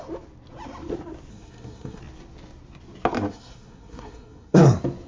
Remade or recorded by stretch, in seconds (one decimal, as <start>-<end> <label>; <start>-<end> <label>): 0.0-1.3 recorded; 1.3-2.0 remade; 2.0-3.3 recorded; 3.3-4.6 remade; 4.6-5.1 recorded